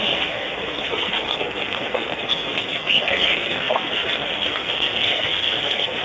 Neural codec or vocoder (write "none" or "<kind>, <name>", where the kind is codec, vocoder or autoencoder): codec, SNAC